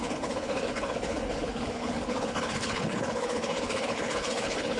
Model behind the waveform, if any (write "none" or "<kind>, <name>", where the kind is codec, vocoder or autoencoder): codec, HILCodec